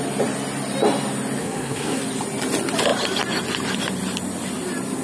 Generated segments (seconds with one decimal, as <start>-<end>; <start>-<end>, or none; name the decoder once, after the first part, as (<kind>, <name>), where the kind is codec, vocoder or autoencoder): 1.4-2.0 (codec, SNAC)